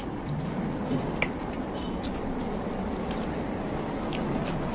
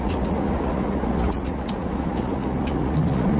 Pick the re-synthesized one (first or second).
second